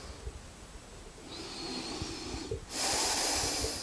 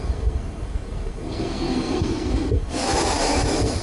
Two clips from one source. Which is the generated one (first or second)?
second